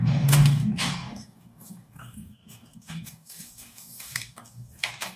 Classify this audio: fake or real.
fake